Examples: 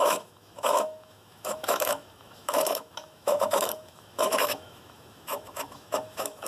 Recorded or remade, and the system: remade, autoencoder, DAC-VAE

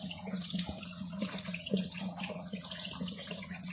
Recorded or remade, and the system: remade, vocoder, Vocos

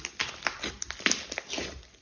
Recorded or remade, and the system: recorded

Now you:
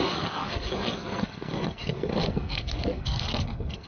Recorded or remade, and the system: remade, codec, SNAC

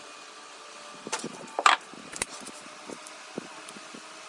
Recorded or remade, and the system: recorded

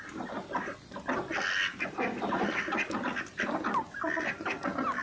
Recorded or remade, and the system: recorded